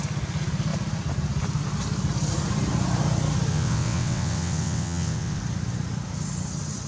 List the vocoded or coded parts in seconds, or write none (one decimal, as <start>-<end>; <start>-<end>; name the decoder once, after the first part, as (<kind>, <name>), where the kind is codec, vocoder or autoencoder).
3.5-5.4 (vocoder, WaveNeXt)